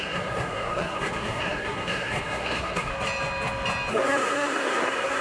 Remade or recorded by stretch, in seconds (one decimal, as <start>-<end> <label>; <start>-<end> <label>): 0.0-2.9 remade; 2.9-3.9 recorded; 3.9-5.2 remade